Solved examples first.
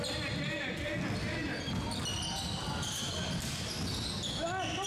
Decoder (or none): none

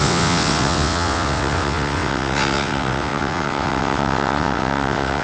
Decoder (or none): vocoder, WaveNeXt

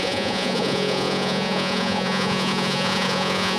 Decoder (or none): vocoder, Vocos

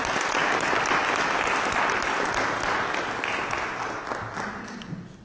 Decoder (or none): none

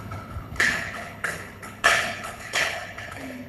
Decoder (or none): codec, HILCodec